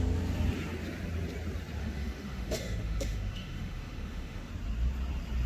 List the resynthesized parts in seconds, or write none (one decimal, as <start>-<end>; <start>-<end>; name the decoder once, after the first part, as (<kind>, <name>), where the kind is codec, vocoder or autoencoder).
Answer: 1.8-4.5 (autoencoder, DAC-VAE)